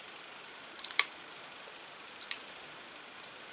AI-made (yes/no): yes